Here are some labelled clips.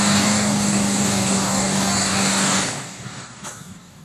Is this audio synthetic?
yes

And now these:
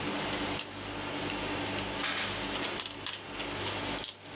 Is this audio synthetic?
no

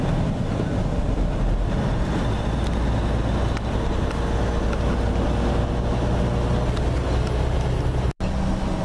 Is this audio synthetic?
no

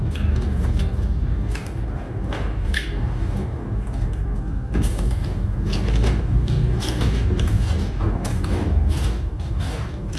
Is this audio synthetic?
yes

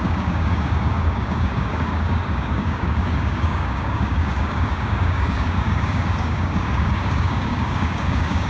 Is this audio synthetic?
yes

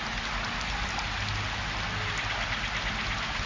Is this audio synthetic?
no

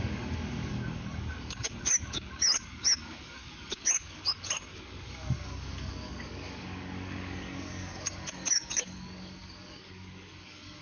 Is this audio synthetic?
yes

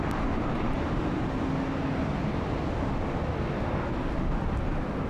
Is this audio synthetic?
no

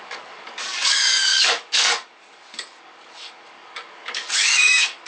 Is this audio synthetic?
yes